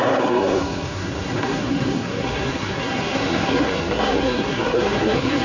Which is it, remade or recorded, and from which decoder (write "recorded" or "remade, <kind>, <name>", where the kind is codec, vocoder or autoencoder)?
remade, codec, SNAC